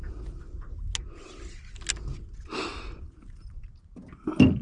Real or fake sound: real